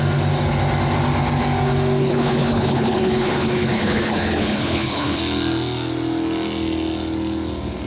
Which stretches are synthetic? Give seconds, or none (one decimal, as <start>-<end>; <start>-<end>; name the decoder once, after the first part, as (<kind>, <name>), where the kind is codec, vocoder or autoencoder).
2.0-5.2 (codec, HILCodec)